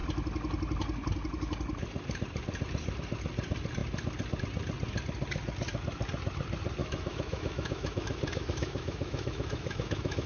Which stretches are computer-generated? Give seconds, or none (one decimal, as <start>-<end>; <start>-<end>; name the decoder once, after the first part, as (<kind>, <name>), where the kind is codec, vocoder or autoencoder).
6.8-10.3 (autoencoder, DAC-VAE)